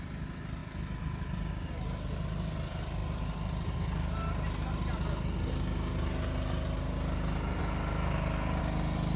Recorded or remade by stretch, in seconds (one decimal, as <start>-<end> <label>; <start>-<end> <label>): 0.0-9.2 recorded

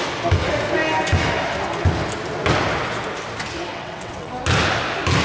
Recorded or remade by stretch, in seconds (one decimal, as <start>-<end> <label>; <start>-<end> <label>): 0.0-3.7 recorded; 3.7-4.3 remade; 4.3-5.2 recorded

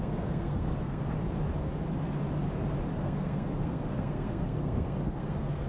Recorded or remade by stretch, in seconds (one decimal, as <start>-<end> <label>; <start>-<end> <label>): 0.0-1.0 remade; 1.0-2.9 recorded; 2.9-5.7 remade

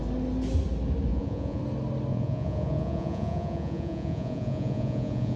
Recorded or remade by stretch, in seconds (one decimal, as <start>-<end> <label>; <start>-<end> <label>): 0.0-1.1 recorded; 1.1-1.6 remade; 1.6-2.1 recorded; 2.1-5.4 remade

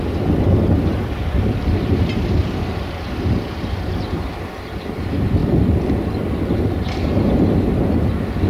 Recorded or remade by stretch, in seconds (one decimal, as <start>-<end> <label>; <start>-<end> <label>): 0.0-1.0 recorded; 1.0-4.7 remade; 4.7-5.4 recorded; 5.4-6.5 remade; 6.5-8.5 recorded